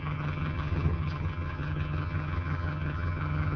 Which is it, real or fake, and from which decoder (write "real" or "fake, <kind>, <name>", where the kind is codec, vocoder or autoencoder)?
fake, vocoder, HiFi-GAN